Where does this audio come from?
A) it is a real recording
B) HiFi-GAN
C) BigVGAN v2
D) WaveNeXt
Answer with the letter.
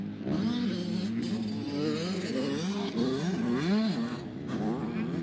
A